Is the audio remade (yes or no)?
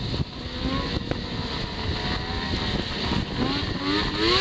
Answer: no